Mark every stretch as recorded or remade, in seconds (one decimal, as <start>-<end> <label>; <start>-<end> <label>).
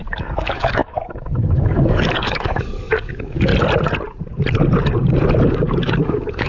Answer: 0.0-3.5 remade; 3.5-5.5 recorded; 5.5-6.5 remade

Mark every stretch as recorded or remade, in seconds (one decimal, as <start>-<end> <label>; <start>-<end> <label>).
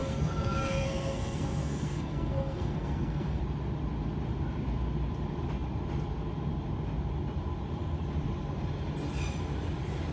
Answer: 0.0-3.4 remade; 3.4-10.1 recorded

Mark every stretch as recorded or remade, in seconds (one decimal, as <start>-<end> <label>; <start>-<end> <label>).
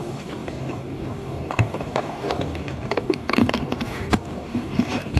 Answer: 0.0-5.2 remade